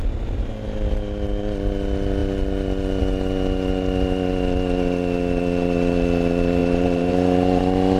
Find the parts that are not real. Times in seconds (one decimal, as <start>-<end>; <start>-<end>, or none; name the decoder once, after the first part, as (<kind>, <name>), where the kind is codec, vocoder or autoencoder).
6.6-7.6 (vocoder, BigVGAN v2)